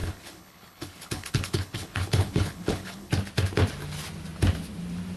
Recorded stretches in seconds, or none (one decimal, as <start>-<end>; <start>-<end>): 3.1-5.2